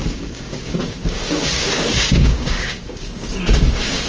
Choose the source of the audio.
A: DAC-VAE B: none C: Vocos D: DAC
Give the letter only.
D